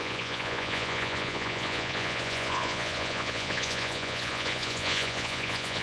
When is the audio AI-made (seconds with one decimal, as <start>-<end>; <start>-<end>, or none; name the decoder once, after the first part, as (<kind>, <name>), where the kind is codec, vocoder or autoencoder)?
0.0-5.8 (vocoder, Vocos)